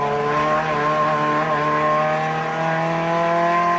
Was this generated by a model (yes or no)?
no